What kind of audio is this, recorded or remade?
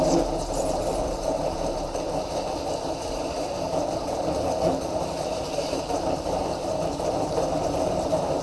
remade